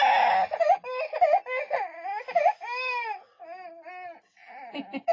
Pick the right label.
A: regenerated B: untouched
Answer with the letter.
B